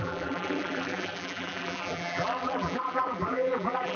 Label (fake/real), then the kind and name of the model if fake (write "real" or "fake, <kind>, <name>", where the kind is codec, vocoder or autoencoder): fake, vocoder, BigVGAN v2